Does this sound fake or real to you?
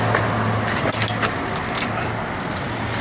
real